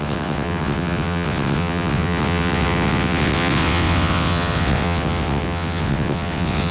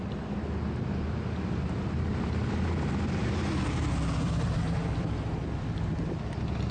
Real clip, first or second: second